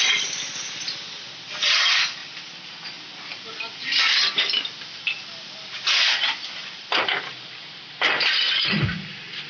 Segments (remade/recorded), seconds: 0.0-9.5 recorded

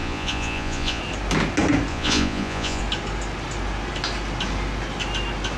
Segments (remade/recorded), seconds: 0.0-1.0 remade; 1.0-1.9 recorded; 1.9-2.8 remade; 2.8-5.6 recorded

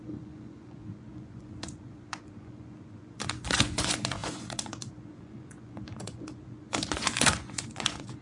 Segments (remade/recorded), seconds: 0.0-8.2 remade

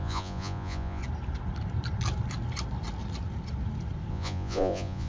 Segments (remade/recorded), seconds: 0.0-1.0 remade; 1.0-4.1 recorded; 4.1-5.1 remade

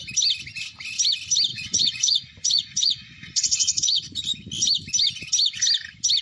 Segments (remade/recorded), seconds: 0.0-1.5 recorded; 1.5-4.2 remade; 4.2-6.2 recorded

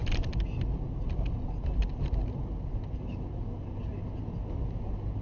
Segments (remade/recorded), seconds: 0.0-5.2 recorded

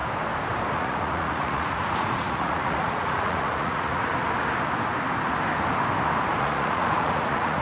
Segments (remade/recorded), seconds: 0.0-0.7 recorded; 0.7-4.1 remade; 4.1-6.4 recorded; 6.4-7.6 remade

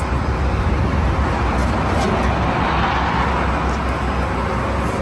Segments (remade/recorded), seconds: 0.0-5.0 recorded